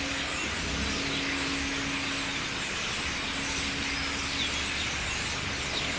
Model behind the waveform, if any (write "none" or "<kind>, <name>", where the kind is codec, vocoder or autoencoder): none